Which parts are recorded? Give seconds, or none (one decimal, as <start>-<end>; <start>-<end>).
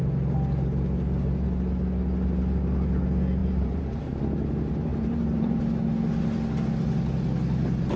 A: 0.0-3.4; 4.2-4.9; 5.6-8.0